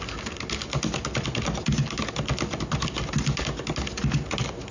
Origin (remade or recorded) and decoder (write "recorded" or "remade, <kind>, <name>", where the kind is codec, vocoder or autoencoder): recorded